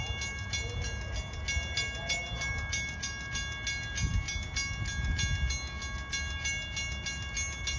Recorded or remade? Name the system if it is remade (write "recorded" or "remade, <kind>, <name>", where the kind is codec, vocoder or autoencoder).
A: recorded